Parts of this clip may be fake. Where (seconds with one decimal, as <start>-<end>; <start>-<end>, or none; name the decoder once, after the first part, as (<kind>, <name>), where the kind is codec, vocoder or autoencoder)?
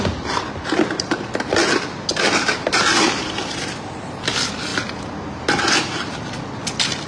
0.0-1.6 (vocoder, BigVGAN v2); 2.2-4.7; 5.6-7.1